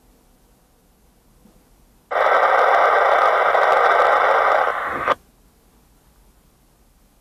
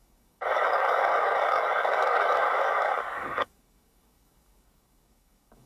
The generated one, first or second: second